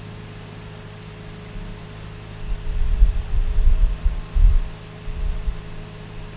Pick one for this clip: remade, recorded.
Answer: recorded